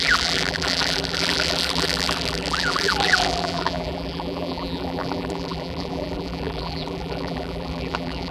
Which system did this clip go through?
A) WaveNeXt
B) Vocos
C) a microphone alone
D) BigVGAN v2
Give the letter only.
D